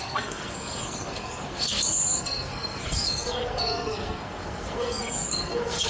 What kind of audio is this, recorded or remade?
remade